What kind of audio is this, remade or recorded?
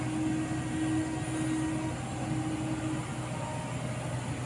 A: recorded